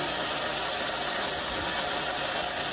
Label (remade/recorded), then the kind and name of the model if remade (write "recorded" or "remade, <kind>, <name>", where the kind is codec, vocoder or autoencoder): recorded